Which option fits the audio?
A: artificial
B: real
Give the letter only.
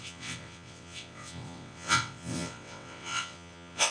A